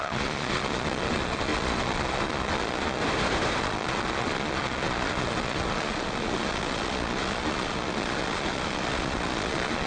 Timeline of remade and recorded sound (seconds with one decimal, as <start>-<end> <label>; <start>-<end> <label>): 0.0-3.0 remade; 3.0-3.6 recorded; 3.6-9.9 remade